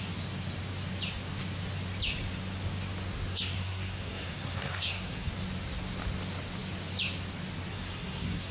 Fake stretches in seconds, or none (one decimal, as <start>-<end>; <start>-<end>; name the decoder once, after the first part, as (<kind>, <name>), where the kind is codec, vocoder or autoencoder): 3.3-5.3 (codec, SNAC); 7.7-8.5